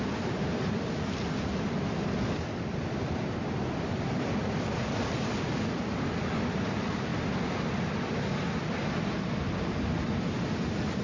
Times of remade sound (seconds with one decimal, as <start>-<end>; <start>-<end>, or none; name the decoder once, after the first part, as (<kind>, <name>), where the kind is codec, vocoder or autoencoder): none